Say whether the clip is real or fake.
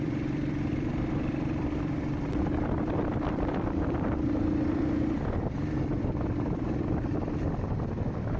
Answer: fake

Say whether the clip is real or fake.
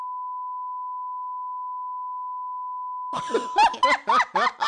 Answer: real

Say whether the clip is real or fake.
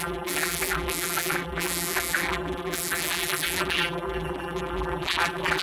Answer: fake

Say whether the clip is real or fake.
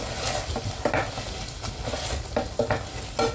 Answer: real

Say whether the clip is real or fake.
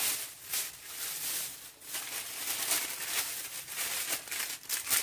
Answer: real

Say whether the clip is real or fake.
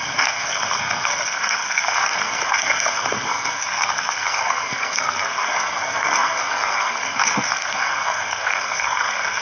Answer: fake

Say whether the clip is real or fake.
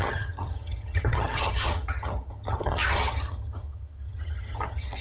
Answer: fake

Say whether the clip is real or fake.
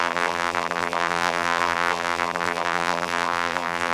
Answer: fake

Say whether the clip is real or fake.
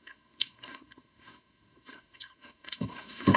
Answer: fake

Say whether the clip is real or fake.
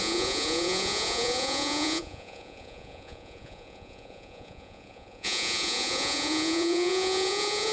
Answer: fake